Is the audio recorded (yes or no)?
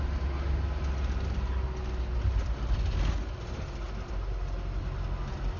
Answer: yes